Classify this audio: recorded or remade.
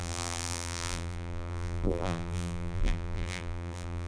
remade